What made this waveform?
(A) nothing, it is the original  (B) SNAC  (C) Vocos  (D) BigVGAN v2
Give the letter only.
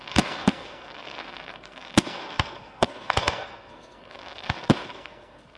B